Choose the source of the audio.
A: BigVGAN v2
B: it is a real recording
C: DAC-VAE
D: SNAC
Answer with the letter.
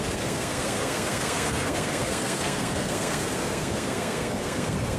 D